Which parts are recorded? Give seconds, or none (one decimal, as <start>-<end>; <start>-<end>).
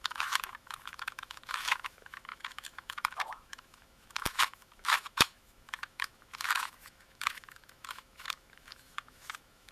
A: none